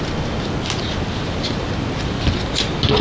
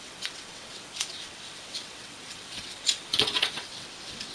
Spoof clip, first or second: second